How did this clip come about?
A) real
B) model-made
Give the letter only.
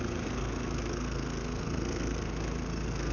B